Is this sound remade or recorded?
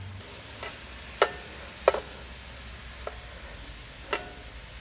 recorded